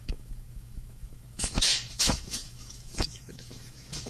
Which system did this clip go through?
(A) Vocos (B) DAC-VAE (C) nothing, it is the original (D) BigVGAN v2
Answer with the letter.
B